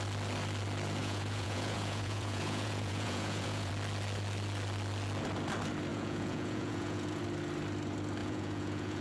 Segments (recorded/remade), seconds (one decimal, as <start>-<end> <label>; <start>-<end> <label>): 0.0-1.0 recorded; 1.0-3.7 remade; 3.7-5.9 recorded; 5.9-7.2 remade; 7.2-8.2 recorded; 8.2-9.0 remade